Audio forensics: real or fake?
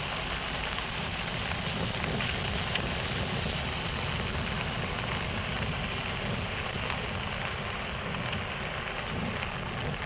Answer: real